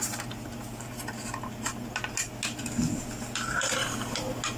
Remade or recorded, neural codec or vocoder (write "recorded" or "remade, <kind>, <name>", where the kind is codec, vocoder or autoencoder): recorded